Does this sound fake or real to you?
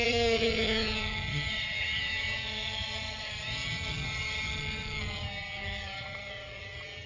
fake